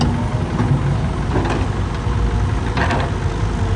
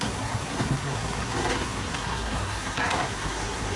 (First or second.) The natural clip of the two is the first